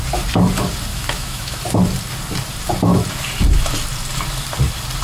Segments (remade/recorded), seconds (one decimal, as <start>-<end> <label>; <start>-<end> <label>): 0.0-0.9 recorded; 0.9-1.6 remade; 1.6-5.0 recorded